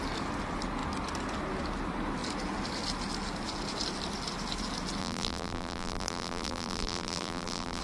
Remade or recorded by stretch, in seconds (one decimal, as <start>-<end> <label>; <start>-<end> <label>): 0.0-5.0 recorded; 5.0-7.8 remade